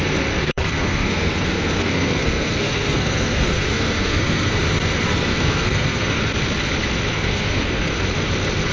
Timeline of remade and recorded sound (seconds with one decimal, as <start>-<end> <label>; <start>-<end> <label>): 0.0-0.4 recorded; 0.4-4.6 remade; 4.6-5.1 recorded; 5.1-6.2 remade; 6.2-7.1 recorded; 7.1-7.9 remade; 7.9-8.7 recorded